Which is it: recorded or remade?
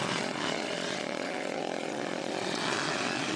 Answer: remade